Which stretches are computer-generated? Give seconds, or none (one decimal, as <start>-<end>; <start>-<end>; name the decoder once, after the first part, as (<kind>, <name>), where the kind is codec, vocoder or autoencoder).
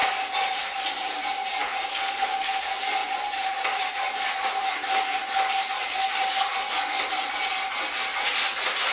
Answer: 1.9-2.6 (codec, SNAC)